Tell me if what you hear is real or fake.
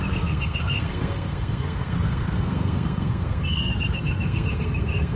fake